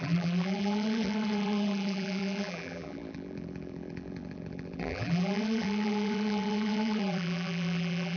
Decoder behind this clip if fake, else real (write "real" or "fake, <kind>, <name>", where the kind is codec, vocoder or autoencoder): fake, vocoder, BigVGAN v2